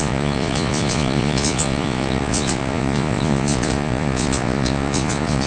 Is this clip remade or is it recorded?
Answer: remade